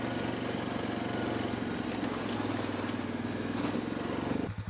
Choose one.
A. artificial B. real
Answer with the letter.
B